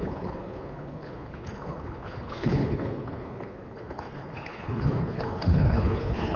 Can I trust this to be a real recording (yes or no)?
no